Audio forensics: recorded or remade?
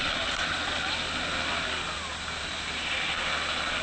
recorded